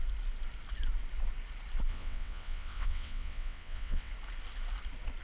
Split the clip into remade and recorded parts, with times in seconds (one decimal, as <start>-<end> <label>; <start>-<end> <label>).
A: 0.0-1.9 recorded; 1.9-4.1 remade; 4.1-5.2 recorded